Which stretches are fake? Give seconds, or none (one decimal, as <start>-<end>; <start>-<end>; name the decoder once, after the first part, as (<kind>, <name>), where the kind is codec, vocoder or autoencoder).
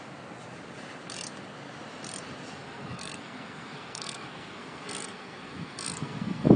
2.5-6.6 (codec, SNAC)